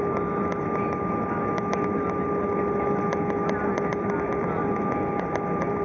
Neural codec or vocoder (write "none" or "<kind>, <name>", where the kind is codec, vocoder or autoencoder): none